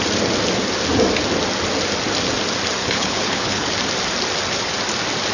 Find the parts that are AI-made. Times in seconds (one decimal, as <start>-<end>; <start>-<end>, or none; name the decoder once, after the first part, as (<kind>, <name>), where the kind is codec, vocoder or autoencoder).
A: 2.8-3.7 (codec, HILCodec)